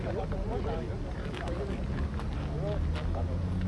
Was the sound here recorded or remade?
recorded